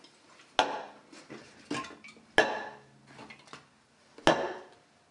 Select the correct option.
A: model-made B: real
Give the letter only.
B